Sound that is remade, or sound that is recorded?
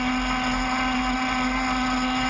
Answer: recorded